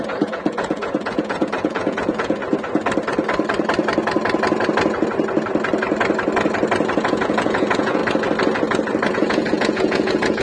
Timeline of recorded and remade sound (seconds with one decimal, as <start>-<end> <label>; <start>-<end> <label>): 0.0-2.4 remade; 2.4-7.0 recorded; 7.0-8.0 remade; 8.0-9.1 recorded; 9.1-10.4 remade

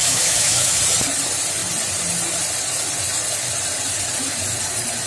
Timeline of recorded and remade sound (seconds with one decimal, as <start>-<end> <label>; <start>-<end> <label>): 0.0-0.8 remade; 0.8-5.1 recorded

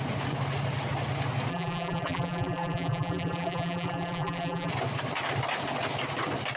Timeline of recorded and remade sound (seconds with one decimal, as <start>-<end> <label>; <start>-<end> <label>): 0.0-1.5 recorded; 1.5-4.7 remade; 4.7-6.6 recorded